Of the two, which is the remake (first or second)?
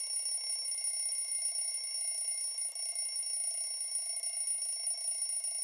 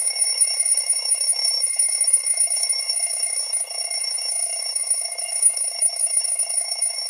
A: second